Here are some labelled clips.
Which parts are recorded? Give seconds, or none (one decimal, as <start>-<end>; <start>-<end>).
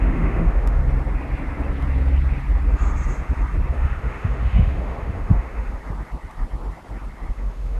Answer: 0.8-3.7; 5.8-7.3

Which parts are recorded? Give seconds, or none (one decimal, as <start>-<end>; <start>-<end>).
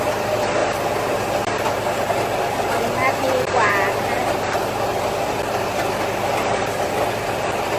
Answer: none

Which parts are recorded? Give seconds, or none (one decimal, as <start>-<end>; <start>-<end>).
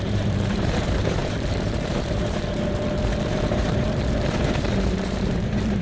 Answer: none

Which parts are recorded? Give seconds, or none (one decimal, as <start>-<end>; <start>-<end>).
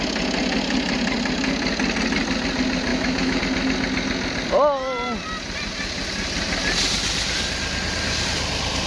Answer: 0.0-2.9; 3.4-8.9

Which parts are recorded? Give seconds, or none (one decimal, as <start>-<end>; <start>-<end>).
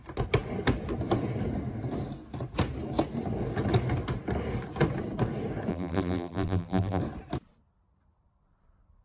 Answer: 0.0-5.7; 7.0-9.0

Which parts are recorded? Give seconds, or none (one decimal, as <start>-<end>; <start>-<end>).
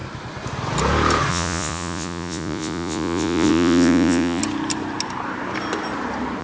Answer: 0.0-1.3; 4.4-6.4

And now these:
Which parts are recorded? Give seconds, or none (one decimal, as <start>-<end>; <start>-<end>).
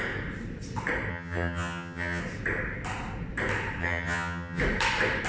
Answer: 0.0-1.1; 2.2-3.8; 4.6-5.3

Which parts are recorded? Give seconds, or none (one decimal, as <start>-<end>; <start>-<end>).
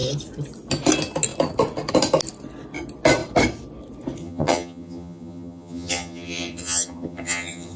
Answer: 0.0-4.2